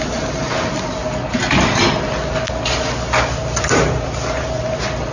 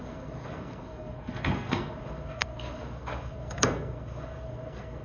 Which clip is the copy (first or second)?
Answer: second